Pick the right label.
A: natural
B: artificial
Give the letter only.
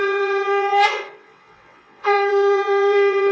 B